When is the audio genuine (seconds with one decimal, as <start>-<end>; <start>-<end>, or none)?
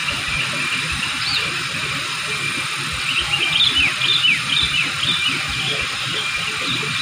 0.0-7.0